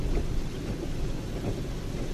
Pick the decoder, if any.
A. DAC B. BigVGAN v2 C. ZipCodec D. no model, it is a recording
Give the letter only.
D